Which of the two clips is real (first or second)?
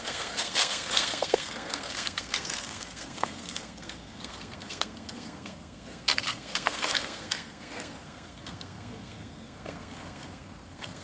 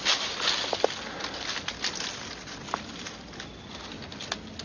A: second